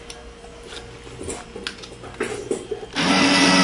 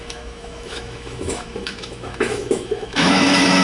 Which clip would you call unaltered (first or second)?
first